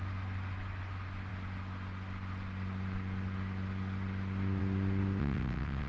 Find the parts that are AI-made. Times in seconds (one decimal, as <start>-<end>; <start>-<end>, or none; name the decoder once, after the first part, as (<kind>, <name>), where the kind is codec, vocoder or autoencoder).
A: 5.2-5.9 (vocoder, WaveNeXt)